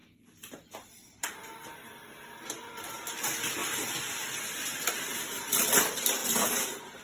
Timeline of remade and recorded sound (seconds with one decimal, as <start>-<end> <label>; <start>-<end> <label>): 0.0-2.9 remade; 2.9-3.6 recorded; 3.6-4.9 remade; 4.9-6.2 recorded; 6.2-7.0 remade